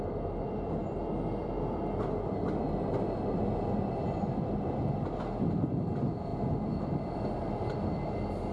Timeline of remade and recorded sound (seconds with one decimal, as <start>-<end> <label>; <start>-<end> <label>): 0.0-8.5 recorded

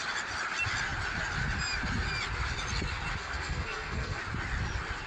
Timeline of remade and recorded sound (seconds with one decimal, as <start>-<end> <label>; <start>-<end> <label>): 0.0-3.2 recorded; 3.2-4.2 remade; 4.2-5.1 recorded

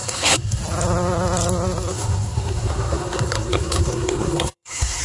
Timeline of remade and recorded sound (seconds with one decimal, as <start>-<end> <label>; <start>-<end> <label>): 0.0-0.6 remade; 0.6-1.9 recorded; 1.9-5.0 remade

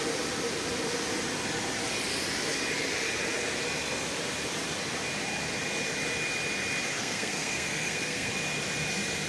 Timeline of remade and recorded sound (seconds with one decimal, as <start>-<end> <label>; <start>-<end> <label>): 0.0-7.0 recorded; 7.0-8.3 remade; 8.3-9.3 recorded

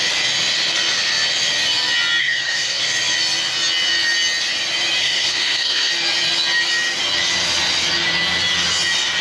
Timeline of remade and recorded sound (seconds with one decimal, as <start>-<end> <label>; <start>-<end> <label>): 0.0-2.2 recorded; 2.2-2.8 remade; 2.8-5.0 recorded; 5.0-5.9 remade; 5.9-9.2 recorded

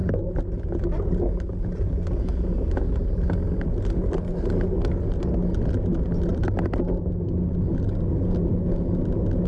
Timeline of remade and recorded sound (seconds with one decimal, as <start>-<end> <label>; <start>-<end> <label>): 0.0-9.5 recorded